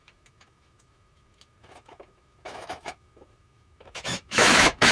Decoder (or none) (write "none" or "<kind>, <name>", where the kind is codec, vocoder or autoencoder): autoencoder, DAC-VAE